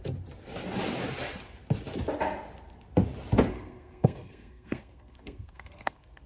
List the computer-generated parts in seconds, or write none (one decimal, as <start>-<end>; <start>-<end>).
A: 3.5-6.3